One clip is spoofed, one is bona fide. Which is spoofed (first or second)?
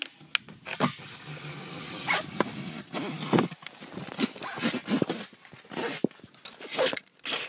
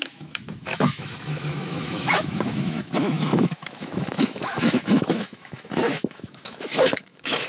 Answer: second